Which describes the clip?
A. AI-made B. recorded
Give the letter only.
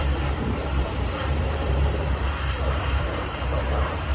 A